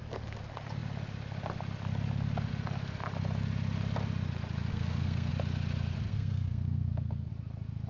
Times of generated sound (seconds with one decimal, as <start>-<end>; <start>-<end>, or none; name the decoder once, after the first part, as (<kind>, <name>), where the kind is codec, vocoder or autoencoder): 4.7-5.3 (codec, SNAC); 6.1-7.3